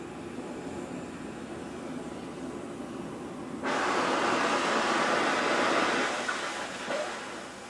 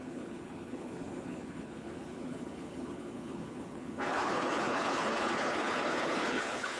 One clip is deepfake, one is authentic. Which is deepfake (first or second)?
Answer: second